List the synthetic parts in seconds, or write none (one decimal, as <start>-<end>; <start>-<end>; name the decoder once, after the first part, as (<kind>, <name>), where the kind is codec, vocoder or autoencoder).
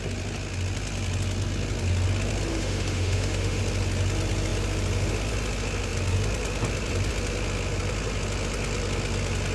2.5-3.6 (autoencoder, DAC-VAE)